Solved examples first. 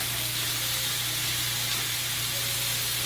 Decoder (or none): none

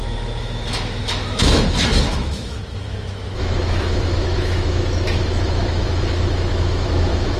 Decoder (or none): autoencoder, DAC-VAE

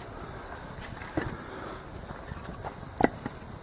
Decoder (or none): none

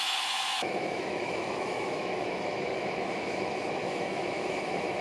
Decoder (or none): autoencoder, DAC-VAE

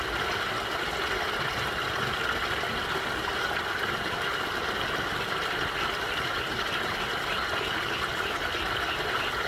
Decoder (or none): none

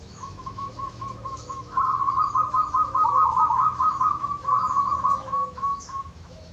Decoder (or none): autoencoder, DAC-VAE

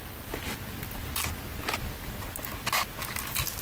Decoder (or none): none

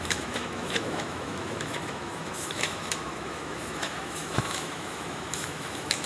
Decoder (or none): autoencoder, DAC-VAE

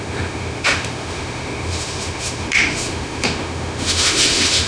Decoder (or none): autoencoder, DAC-VAE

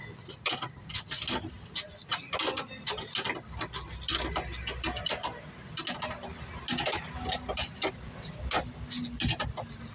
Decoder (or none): none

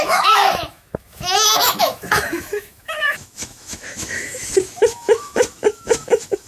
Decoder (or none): autoencoder, DAC-VAE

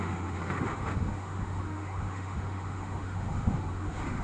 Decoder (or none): autoencoder, DAC-VAE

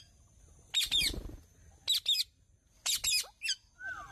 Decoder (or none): none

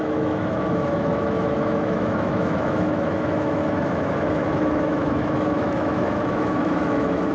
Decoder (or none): autoencoder, DAC-VAE